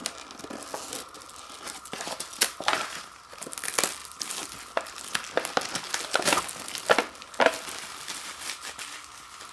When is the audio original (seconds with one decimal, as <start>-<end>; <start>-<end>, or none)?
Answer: 0.0-2.7; 3.5-9.5